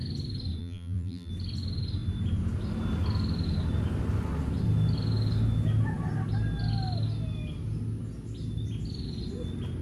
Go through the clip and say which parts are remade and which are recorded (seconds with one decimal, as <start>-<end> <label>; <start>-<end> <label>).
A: 0.0-0.6 recorded; 0.6-1.3 remade; 1.3-9.8 recorded